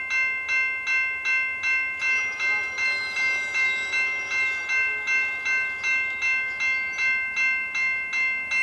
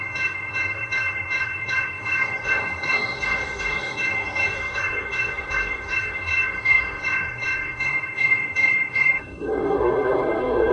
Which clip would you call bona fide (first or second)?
first